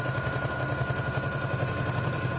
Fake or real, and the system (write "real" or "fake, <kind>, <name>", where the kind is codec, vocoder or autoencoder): real